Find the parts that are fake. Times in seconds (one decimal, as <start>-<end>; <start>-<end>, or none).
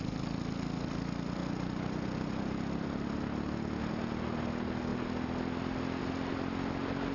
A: none